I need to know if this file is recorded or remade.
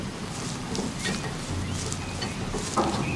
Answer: recorded